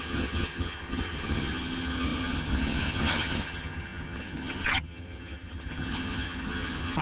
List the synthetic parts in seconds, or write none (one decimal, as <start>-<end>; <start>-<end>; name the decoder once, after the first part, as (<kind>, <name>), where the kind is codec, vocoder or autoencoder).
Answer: 0.0-7.0 (vocoder, HiFi-GAN)